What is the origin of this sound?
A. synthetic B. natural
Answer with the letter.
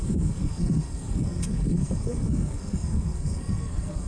A